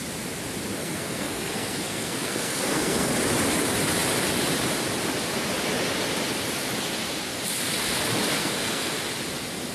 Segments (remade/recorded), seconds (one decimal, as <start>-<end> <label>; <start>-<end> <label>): 0.0-0.8 recorded; 0.8-3.1 remade; 3.1-8.4 recorded; 8.4-8.9 remade; 8.9-9.7 recorded

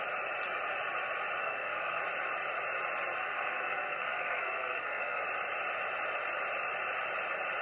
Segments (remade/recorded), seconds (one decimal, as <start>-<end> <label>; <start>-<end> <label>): 0.0-1.4 recorded; 1.4-2.0 remade; 2.0-3.2 recorded; 3.2-5.2 remade; 5.2-7.6 recorded